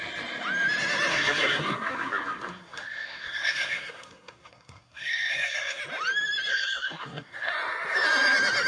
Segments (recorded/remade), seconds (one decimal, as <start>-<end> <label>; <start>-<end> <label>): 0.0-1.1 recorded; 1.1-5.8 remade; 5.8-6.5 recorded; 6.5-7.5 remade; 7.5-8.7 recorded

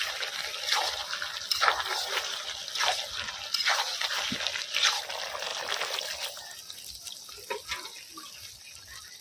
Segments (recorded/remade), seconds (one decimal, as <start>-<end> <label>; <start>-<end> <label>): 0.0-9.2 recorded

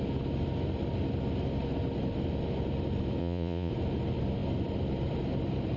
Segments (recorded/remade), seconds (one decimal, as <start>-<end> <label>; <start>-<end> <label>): 0.0-3.2 recorded; 3.2-3.7 remade; 3.7-5.8 recorded